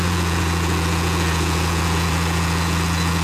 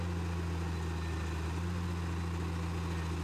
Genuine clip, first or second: second